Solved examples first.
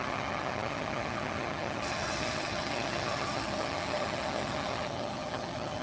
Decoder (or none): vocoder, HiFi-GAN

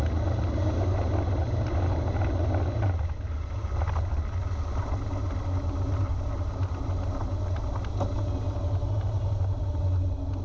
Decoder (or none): none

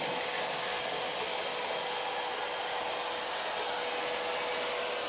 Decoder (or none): none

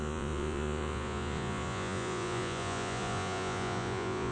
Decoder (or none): vocoder, Vocos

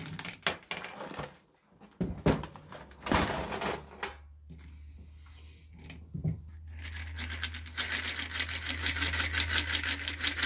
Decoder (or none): none